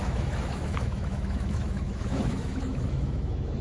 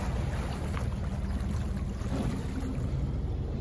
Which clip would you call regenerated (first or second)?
first